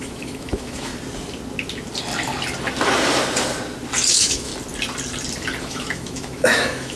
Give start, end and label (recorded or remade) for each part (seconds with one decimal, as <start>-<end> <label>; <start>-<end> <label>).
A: 0.0-0.9 remade; 0.9-4.1 recorded; 4.1-4.5 remade; 4.5-5.6 recorded; 5.6-7.0 remade